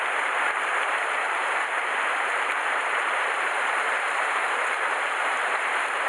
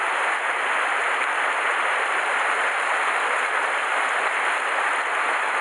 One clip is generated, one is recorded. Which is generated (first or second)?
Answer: first